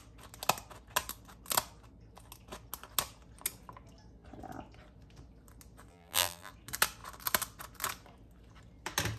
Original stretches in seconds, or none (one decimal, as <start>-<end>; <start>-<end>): 0.0-5.9; 6.5-9.2